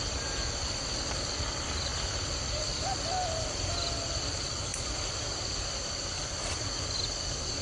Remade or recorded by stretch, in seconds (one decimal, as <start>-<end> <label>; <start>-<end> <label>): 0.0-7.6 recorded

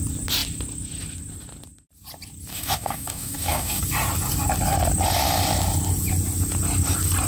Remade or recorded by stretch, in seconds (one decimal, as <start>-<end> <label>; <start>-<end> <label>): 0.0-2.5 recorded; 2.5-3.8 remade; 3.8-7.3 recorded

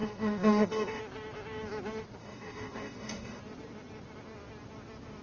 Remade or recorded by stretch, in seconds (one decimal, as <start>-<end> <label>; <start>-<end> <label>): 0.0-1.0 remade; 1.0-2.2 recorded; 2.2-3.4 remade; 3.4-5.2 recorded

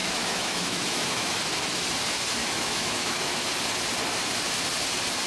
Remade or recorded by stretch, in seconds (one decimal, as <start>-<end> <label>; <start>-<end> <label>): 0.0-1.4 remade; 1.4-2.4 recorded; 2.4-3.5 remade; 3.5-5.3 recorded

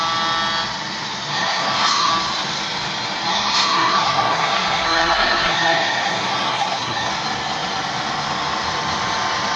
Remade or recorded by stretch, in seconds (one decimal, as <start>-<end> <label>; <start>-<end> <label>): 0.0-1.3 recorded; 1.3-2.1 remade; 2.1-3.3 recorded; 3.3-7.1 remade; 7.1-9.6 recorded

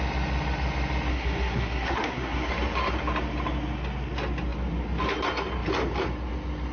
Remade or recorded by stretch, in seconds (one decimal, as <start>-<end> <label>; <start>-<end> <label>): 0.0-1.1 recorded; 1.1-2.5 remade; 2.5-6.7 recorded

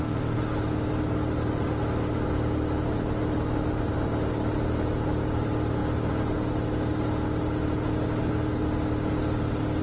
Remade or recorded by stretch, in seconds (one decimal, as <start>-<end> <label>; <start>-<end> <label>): 0.0-9.8 recorded